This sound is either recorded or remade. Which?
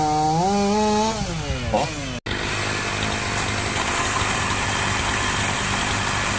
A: recorded